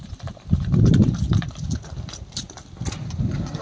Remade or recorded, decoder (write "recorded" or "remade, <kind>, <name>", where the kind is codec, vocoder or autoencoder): recorded